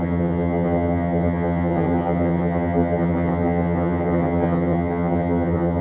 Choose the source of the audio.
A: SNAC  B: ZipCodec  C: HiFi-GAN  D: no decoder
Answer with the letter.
C